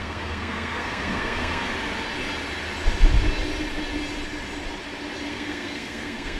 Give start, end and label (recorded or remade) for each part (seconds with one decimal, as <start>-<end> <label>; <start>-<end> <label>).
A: 0.0-1.7 remade; 1.7-5.3 recorded; 5.3-6.4 remade